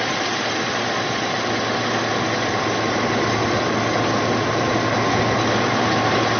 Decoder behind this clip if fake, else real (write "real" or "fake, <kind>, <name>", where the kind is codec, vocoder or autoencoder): real